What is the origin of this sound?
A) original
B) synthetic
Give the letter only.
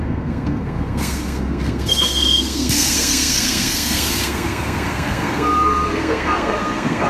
B